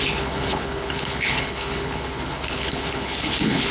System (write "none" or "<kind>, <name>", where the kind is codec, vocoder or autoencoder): codec, HILCodec